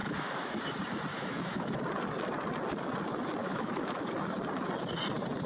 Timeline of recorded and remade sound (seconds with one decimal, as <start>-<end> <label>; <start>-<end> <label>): 0.0-0.6 remade; 0.6-1.1 recorded; 1.1-1.8 remade; 1.8-3.4 recorded; 3.4-4.0 remade; 4.0-5.5 recorded